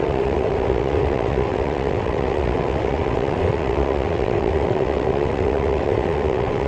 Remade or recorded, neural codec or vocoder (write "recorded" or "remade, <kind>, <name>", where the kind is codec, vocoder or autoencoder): remade, vocoder, WaveNeXt